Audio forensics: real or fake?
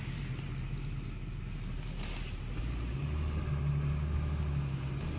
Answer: real